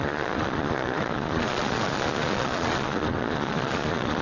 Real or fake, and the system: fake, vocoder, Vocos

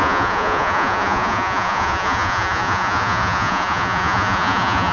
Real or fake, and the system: fake, vocoder, Vocos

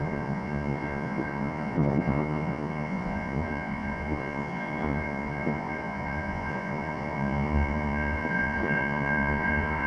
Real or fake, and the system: fake, vocoder, Vocos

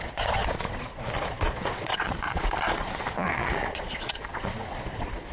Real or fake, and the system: fake, vocoder, Vocos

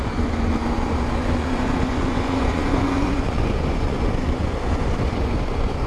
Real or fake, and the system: fake, vocoder, Vocos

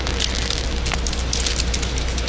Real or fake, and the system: real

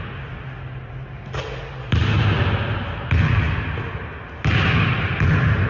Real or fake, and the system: real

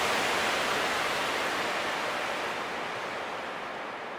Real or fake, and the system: real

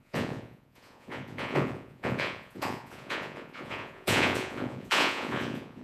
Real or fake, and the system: fake, vocoder, Vocos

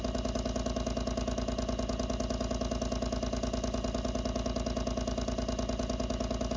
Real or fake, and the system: real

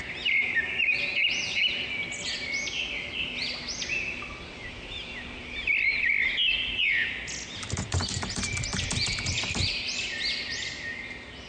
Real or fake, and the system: real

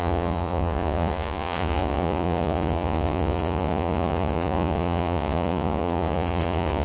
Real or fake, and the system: fake, vocoder, Vocos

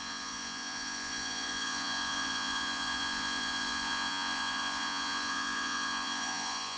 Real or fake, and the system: fake, vocoder, Vocos